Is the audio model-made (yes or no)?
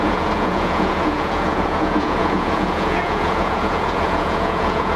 yes